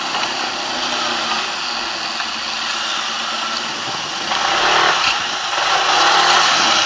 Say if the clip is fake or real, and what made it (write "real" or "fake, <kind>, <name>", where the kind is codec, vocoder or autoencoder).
real